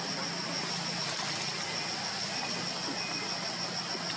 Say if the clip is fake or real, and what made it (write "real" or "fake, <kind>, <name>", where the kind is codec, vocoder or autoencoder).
real